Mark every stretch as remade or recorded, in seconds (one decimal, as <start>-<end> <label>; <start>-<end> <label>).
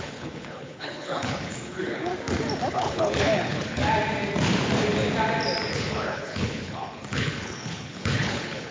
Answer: 0.0-2.1 remade; 2.1-2.7 recorded; 2.7-3.8 remade; 3.8-5.7 recorded; 5.7-8.7 remade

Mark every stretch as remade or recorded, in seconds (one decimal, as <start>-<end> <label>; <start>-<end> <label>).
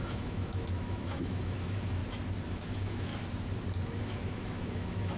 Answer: 0.0-2.0 remade; 2.0-2.5 recorded; 2.5-3.1 remade; 3.1-4.0 recorded; 4.0-5.2 remade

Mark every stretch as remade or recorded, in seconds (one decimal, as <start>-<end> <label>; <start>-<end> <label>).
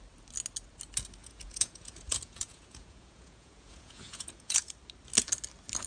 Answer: 0.0-1.2 recorded; 1.2-4.7 remade; 4.7-5.9 recorded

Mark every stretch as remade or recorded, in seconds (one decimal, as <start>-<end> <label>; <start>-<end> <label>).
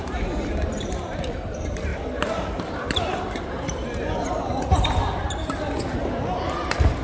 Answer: 0.0-5.0 remade; 5.0-5.6 recorded; 5.6-7.0 remade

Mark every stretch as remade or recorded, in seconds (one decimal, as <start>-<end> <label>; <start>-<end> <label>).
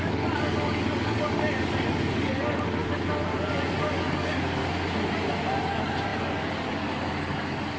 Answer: 0.0-2.8 remade; 2.8-3.8 recorded; 3.8-4.6 remade; 4.6-5.6 recorded; 5.6-7.8 remade